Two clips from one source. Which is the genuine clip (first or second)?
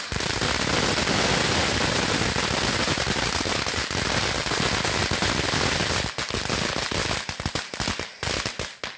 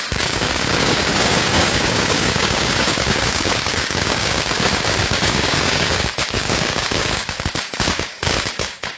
first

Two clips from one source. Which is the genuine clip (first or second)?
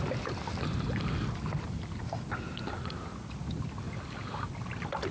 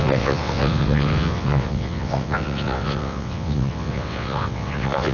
first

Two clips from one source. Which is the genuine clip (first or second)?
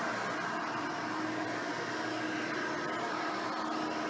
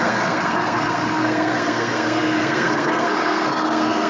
first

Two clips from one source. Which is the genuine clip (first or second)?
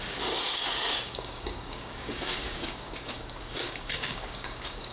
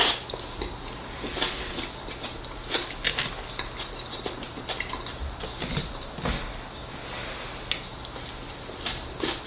second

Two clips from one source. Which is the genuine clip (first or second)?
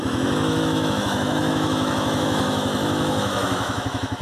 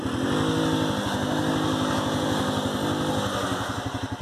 second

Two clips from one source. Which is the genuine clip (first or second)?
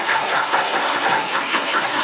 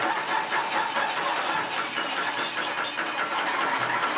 second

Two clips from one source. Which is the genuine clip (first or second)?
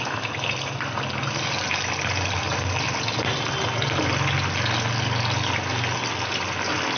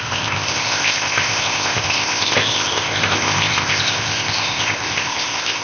first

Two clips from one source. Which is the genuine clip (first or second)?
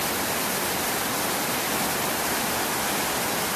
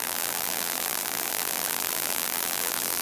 first